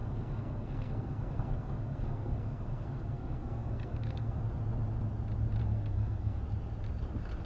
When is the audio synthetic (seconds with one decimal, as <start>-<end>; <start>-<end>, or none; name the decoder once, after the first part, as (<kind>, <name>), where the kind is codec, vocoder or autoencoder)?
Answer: 0.0-4.4 (codec, SNAC); 5.6-6.4